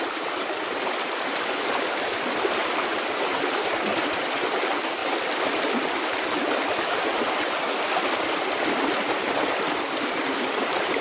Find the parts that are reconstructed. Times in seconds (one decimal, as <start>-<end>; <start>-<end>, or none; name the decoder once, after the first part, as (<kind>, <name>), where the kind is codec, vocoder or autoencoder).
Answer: none